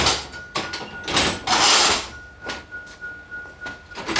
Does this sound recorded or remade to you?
recorded